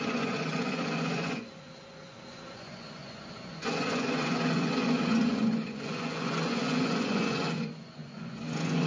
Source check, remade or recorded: remade